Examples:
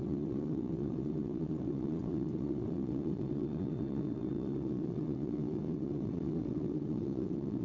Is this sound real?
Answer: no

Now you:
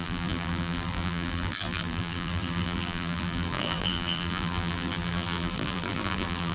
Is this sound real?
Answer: no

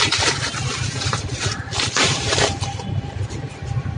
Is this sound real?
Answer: no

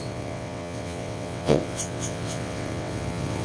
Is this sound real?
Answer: no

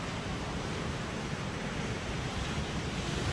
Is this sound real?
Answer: no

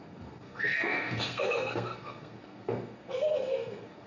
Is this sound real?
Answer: no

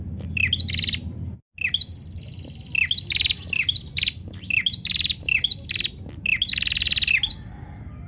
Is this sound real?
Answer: yes